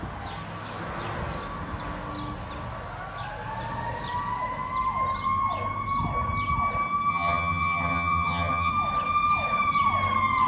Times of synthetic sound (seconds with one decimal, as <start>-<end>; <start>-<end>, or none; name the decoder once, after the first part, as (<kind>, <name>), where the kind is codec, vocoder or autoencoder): 7.1-8.7 (vocoder, HiFi-GAN)